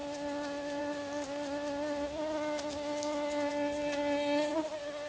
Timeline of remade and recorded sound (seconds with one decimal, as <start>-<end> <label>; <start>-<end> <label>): 0.0-5.1 recorded